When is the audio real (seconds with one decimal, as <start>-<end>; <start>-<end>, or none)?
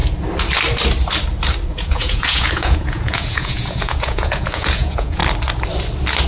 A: 0.0-1.7; 5.2-6.3